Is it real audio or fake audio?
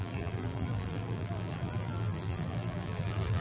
fake